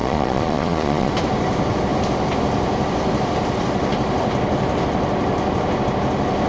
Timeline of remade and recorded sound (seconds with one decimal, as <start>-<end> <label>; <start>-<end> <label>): 0.0-1.1 remade; 1.1-6.5 recorded